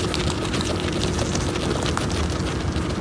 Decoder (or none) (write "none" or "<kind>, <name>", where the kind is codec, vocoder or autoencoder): none